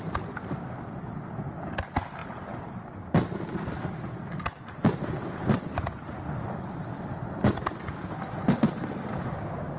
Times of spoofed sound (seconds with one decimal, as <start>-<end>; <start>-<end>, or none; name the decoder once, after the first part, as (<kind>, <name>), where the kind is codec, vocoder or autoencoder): 4.5-6.1 (vocoder, BigVGAN v2)